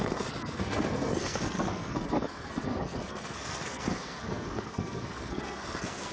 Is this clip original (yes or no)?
no